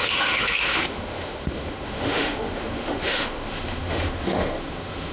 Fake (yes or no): yes